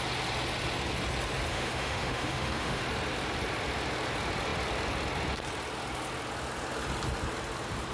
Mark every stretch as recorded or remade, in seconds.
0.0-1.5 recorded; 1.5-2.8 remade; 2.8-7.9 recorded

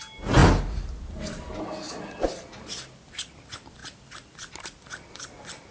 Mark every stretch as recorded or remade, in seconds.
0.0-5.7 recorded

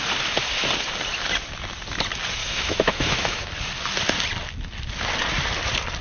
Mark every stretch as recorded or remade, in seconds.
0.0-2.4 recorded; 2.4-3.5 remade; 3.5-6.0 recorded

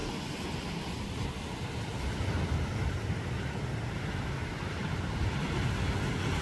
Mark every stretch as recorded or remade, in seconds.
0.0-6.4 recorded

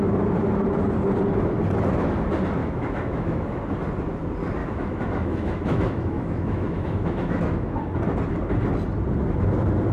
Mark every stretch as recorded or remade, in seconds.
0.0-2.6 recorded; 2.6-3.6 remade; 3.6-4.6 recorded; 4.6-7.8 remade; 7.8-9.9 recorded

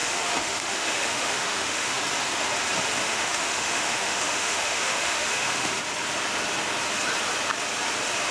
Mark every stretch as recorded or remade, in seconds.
0.0-2.0 remade; 2.0-3.0 recorded; 3.0-5.8 remade; 5.8-8.3 recorded

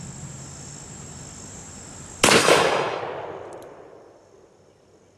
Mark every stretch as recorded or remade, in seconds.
0.0-2.4 recorded; 2.4-3.0 remade; 3.0-5.2 recorded